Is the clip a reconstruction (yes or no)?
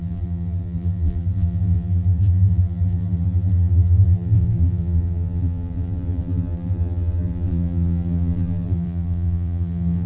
yes